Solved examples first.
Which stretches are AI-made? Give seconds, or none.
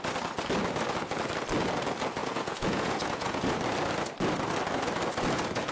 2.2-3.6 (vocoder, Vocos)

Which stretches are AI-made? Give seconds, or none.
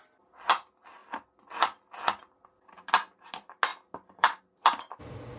3.7-4.4 (vocoder, BigVGAN v2)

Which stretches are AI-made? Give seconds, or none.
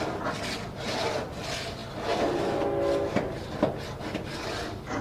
none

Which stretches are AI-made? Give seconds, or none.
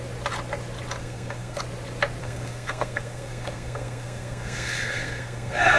1.0-1.6 (codec, SNAC); 2.2-5.8